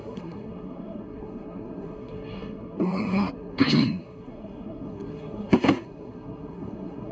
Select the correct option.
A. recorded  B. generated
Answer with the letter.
B